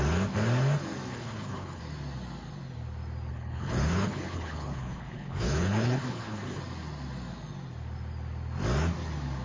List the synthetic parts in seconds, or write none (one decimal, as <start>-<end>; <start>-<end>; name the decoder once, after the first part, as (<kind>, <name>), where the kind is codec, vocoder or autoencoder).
1.1-1.8 (codec, HILCodec); 3.3-6.6